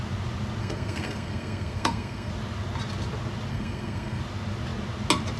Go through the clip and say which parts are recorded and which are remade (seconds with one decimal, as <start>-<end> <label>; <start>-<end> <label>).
0.0-0.6 recorded; 0.6-2.3 remade; 2.3-3.5 recorded; 3.5-4.2 remade; 4.2-5.4 recorded